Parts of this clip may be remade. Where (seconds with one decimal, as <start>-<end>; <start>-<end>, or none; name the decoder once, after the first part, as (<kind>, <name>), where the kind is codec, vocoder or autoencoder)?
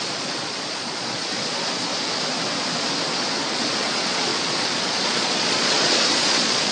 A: 0.0-1.9 (vocoder, Vocos); 3.4-6.7